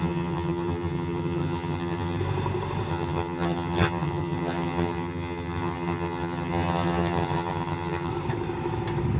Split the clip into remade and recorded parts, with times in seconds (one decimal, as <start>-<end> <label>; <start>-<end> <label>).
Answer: 0.0-2.2 remade; 2.2-2.9 recorded; 2.9-8.1 remade; 8.1-9.2 recorded